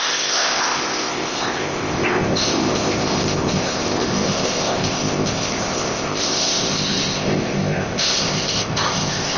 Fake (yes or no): yes